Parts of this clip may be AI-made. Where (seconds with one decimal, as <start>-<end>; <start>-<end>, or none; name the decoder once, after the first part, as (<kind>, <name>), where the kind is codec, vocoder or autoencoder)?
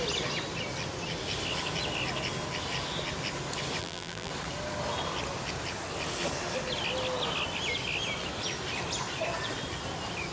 3.8-4.3 (vocoder, BigVGAN v2)